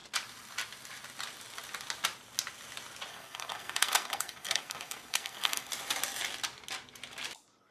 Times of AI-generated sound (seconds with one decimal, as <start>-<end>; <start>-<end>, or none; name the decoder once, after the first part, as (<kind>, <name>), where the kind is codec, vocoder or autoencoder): 3.1-5.7 (codec, SNAC)